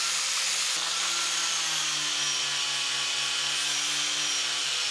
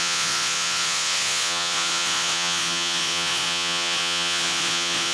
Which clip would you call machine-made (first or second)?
second